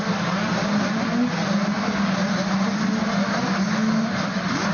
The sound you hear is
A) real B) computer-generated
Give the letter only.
A